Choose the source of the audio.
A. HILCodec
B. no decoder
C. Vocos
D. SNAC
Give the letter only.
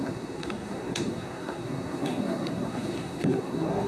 D